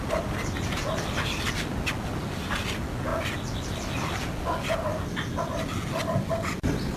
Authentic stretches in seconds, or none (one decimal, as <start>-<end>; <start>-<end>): 0.0-7.0